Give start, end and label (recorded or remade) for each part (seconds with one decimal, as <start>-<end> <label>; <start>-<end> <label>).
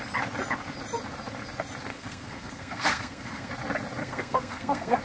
0.0-1.9 recorded; 1.9-3.5 remade; 3.5-4.0 recorded; 4.0-5.0 remade